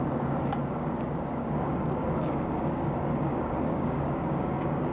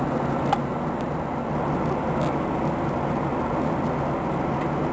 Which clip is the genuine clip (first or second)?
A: second